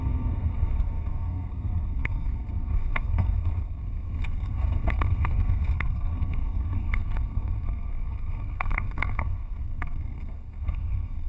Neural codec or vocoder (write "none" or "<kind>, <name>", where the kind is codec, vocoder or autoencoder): codec, SNAC